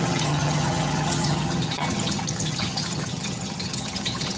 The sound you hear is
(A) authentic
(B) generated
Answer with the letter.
B